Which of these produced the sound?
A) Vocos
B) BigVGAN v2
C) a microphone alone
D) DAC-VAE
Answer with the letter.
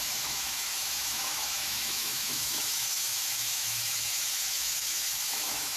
D